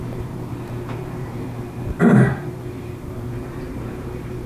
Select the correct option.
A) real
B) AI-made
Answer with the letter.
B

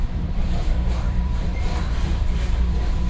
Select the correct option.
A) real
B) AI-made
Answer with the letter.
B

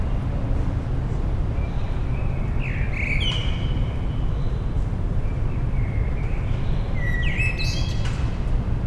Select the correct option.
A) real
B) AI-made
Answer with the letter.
A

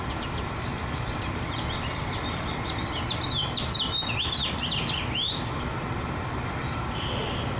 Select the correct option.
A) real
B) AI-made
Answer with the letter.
B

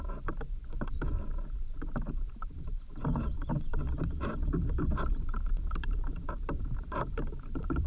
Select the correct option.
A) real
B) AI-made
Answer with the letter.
B